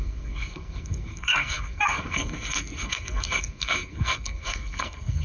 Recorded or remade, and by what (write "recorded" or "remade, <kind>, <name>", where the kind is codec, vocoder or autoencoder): remade, codec, SNAC